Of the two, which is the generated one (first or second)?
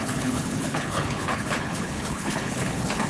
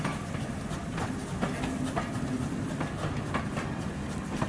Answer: first